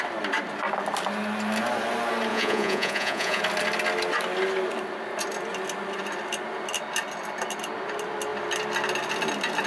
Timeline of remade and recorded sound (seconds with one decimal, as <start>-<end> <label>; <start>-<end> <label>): 0.0-2.3 recorded; 2.3-3.4 remade; 3.4-9.7 recorded